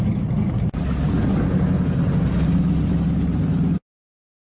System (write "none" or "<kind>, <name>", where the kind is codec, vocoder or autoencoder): none